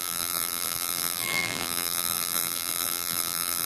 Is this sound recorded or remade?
remade